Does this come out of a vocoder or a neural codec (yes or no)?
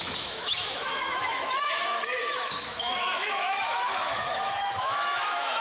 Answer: yes